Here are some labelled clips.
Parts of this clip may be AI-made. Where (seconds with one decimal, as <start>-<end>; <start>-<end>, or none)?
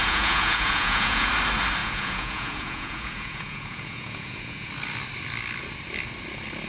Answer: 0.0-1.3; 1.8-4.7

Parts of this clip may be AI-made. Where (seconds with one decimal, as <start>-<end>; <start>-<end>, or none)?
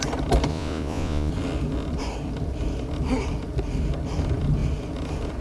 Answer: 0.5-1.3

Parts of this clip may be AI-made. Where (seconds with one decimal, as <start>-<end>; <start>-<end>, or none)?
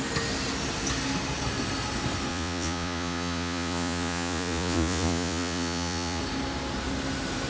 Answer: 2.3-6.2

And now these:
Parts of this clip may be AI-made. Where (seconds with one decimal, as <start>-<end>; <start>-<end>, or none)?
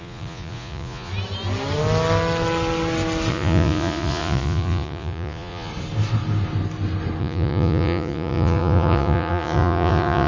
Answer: 0.0-1.1; 3.3-5.7; 7.2-10.3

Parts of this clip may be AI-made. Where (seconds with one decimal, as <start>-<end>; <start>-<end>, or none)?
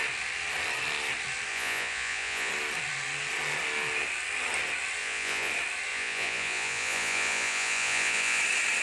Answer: 1.5-2.5; 5.0-5.5; 5.9-8.4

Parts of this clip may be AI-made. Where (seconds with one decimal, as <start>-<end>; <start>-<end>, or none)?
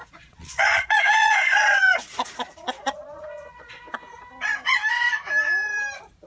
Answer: 0.0-3.8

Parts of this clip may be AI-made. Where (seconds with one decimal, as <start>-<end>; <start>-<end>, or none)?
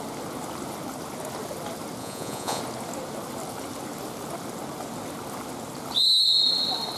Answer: 2.0-2.6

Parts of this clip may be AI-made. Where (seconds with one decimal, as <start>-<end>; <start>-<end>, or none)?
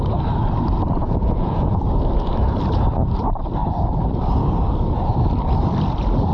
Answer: 1.0-1.8